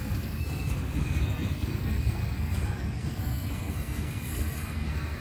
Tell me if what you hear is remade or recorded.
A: remade